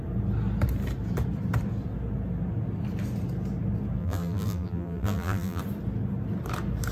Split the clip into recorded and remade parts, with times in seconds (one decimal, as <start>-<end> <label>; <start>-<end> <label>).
0.0-4.0 recorded; 4.0-5.6 remade; 5.6-6.9 recorded